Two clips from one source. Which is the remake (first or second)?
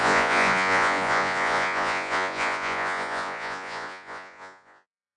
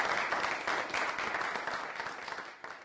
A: first